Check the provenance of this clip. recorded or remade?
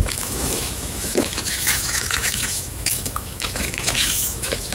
remade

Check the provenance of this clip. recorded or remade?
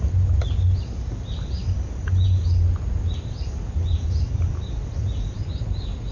recorded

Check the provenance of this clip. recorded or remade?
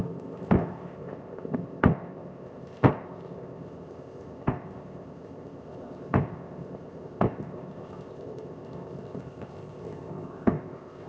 remade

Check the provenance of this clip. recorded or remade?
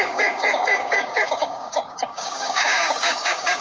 remade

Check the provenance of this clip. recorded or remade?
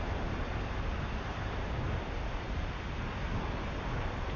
recorded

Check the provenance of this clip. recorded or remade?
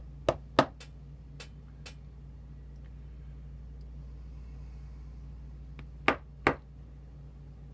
recorded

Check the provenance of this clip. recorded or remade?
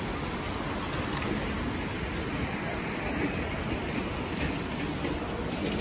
recorded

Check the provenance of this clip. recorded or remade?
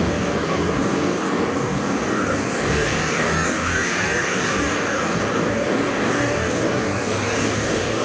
remade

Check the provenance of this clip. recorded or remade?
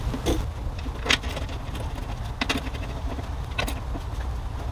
recorded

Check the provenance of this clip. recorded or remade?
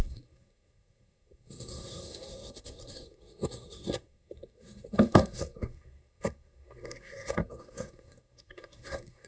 remade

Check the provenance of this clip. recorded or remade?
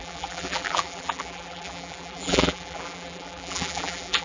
remade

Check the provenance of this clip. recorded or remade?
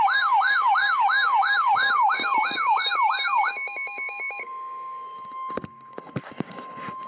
remade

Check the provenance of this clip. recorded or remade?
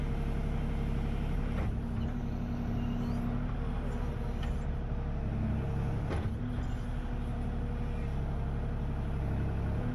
recorded